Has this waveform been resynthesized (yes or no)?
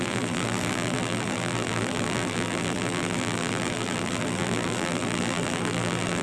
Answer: yes